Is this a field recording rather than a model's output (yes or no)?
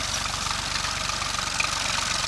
yes